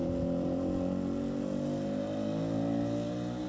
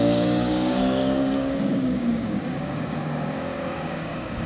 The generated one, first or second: second